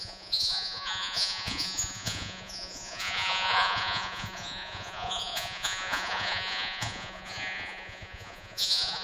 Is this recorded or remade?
remade